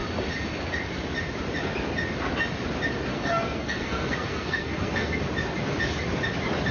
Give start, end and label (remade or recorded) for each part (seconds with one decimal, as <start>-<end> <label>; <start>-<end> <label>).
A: 0.0-3.1 recorded; 3.1-5.2 remade; 5.2-6.7 recorded